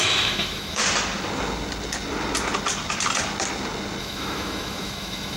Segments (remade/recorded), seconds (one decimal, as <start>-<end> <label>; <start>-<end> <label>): 0.0-0.8 remade; 0.8-4.0 recorded; 4.0-5.4 remade

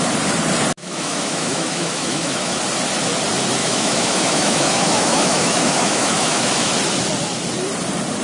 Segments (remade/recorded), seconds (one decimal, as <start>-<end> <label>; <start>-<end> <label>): 0.0-0.8 recorded; 0.8-2.6 remade; 2.6-3.6 recorded; 3.6-6.7 remade; 6.7-8.2 recorded